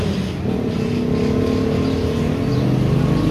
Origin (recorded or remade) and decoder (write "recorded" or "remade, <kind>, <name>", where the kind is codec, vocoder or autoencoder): recorded